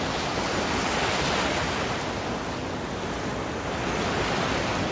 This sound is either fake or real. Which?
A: real